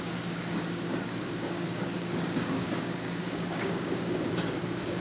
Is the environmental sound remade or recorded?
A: remade